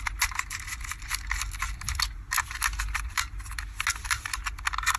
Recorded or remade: recorded